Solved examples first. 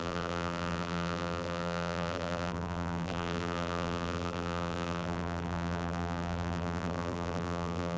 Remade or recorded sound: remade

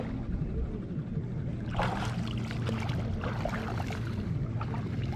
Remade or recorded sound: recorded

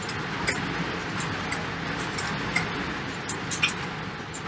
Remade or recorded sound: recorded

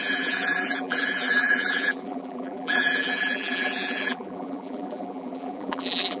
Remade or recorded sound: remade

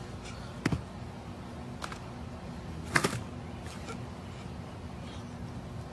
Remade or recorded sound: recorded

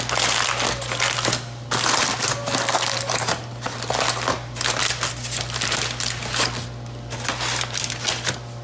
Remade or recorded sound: recorded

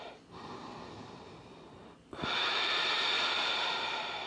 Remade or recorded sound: recorded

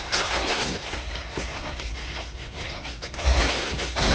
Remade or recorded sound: remade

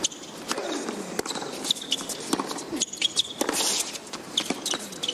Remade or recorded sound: recorded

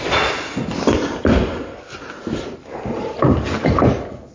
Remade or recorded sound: recorded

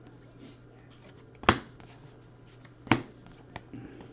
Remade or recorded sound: recorded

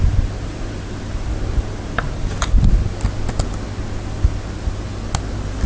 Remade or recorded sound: recorded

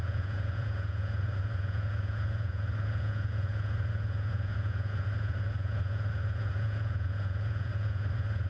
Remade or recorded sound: remade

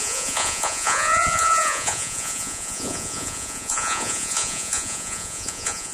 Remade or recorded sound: remade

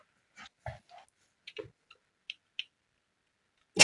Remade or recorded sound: recorded